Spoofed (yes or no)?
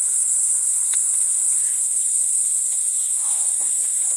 yes